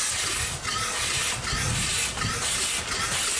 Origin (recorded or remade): recorded